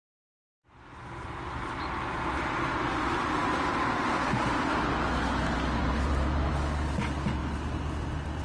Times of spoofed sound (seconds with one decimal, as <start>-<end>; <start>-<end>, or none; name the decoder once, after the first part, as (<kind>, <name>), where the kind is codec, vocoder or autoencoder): 5.8-6.5 (vocoder, BigVGAN v2)